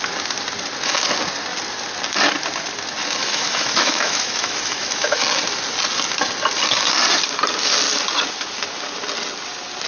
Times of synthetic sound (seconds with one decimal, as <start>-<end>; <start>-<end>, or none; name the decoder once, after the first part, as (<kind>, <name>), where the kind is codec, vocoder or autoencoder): 3.2-5.2 (autoencoder, DAC-VAE)